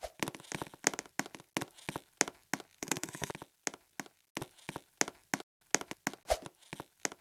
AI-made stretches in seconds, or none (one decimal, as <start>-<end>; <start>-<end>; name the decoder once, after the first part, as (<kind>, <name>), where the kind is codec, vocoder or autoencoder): 2.8-3.3 (codec, SNAC)